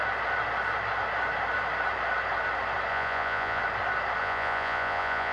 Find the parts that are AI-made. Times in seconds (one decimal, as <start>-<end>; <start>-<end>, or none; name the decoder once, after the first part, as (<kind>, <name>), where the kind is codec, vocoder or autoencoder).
2.9-3.6 (vocoder, Vocos); 4.2-5.3